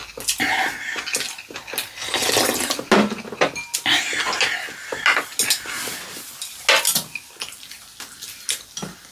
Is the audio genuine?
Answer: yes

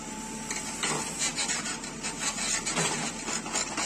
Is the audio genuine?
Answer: yes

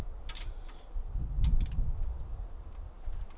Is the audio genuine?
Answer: yes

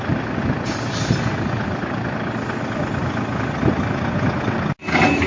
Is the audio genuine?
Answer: yes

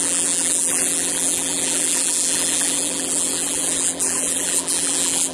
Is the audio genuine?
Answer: no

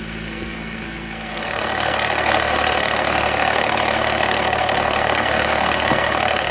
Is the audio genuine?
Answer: no